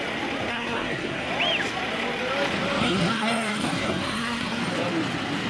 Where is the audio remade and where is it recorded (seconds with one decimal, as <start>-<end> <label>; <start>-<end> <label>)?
0.0-0.5 recorded; 0.5-1.3 remade; 1.3-2.8 recorded; 2.8-4.6 remade; 4.6-5.5 recorded